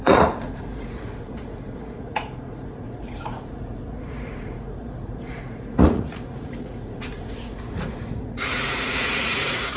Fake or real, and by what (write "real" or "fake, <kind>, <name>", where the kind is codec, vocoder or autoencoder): fake, vocoder, Vocos